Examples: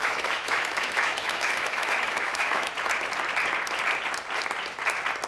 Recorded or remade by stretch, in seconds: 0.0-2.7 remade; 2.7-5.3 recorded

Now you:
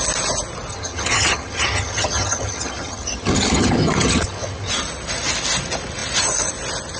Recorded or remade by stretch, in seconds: 0.0-0.7 recorded; 0.7-4.7 remade; 4.7-7.0 recorded

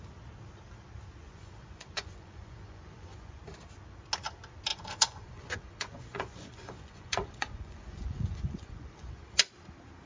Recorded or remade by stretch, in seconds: 0.0-1.2 recorded; 1.2-3.4 remade; 3.4-4.7 recorded; 4.7-9.5 remade; 9.5-10.1 recorded

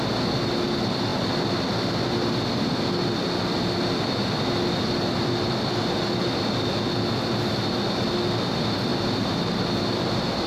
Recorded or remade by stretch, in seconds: 0.0-8.9 recorded; 8.9-9.6 remade; 9.6-10.5 recorded